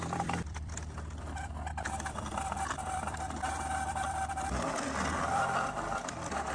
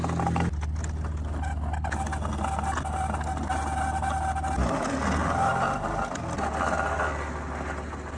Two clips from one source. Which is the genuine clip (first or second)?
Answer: second